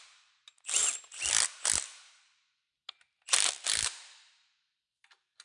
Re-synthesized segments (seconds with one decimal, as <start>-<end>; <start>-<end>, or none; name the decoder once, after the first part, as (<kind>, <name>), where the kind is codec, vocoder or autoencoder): none